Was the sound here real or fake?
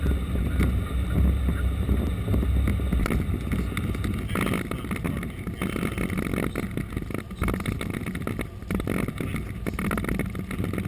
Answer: real